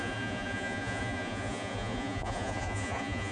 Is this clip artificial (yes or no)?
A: yes